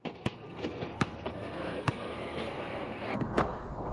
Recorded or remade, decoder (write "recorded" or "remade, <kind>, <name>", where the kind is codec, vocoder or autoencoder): remade, codec, SNAC